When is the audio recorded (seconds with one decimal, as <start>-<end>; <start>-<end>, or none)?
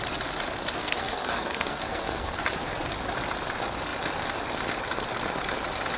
0.0-0.8; 2.4-6.0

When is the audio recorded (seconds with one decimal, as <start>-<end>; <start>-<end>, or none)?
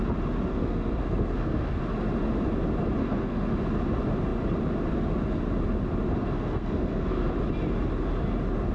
0.0-0.5; 1.8-3.0; 3.5-6.2; 7.3-8.7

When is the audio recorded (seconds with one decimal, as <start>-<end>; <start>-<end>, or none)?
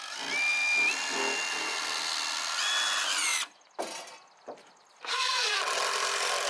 0.0-5.1; 5.6-6.5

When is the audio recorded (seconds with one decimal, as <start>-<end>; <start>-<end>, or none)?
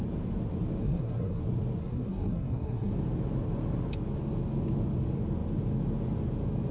0.0-0.8; 1.4-1.8; 2.9-6.7